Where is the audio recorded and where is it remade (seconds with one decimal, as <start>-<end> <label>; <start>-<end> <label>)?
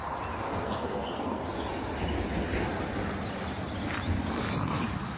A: 0.0-0.6 recorded; 0.6-1.4 remade; 1.4-5.2 recorded